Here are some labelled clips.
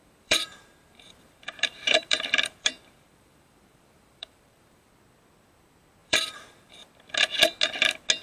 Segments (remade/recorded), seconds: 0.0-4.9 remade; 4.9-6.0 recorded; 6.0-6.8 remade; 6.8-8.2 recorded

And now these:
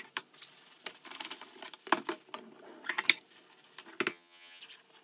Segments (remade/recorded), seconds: 0.0-4.1 recorded; 4.1-4.6 remade; 4.6-5.0 recorded

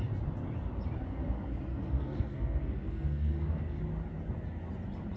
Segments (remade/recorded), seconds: 0.0-1.7 recorded; 1.7-3.8 remade; 3.8-5.2 recorded